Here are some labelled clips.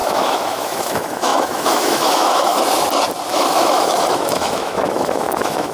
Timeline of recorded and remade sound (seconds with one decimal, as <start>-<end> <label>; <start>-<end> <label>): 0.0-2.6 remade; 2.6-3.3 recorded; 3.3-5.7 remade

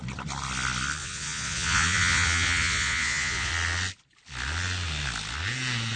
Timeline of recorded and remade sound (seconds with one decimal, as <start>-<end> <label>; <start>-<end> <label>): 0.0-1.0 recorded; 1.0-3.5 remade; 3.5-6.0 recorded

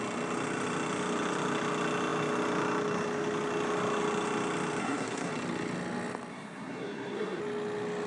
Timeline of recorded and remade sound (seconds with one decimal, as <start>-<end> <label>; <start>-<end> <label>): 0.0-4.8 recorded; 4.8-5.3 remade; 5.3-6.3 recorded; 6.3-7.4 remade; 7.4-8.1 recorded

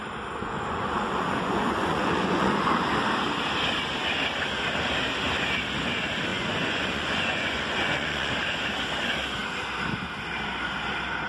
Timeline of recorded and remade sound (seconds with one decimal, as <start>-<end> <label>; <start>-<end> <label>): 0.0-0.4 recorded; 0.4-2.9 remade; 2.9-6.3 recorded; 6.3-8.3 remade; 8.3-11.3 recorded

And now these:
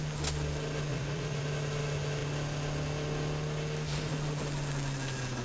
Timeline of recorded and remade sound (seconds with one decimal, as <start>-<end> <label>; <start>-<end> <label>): 0.0-0.9 recorded; 0.9-1.4 remade; 1.4-5.4 recorded

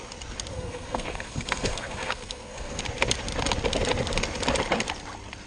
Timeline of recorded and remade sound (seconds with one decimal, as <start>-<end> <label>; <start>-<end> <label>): 0.0-0.5 recorded; 0.5-2.8 remade; 2.8-5.5 recorded

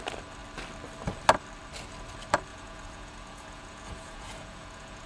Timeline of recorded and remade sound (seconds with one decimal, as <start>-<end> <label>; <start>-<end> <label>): 0.0-2.5 recorded; 2.5-5.1 remade